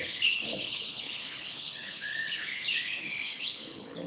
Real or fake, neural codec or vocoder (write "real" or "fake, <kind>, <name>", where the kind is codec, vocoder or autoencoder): fake, codec, HILCodec